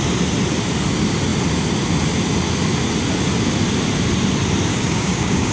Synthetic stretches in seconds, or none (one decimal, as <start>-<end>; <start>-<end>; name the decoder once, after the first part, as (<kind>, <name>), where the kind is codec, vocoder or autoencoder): 4.7-5.5 (codec, DAC)